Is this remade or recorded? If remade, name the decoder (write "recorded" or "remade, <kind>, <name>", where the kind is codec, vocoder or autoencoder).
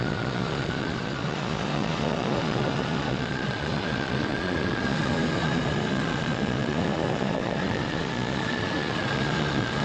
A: remade, vocoder, Vocos